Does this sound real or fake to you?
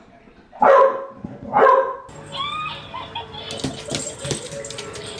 real